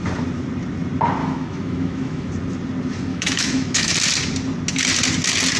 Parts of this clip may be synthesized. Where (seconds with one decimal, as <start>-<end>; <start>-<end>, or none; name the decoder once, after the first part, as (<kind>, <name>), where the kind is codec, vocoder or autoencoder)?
1.2-2.3 (autoencoder, DAC-VAE); 3.1-3.9